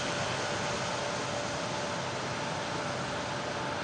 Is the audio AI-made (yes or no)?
no